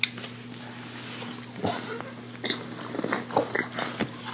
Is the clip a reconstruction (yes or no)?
no